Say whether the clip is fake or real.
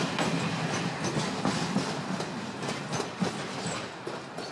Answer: real